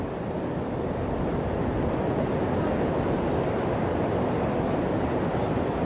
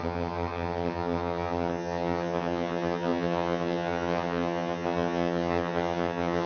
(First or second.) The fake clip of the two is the second